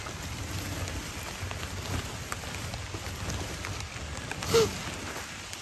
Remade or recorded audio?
recorded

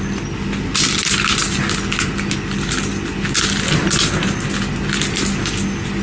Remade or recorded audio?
recorded